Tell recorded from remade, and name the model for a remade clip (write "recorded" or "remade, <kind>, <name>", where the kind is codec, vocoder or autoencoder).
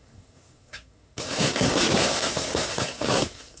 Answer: remade, codec, SNAC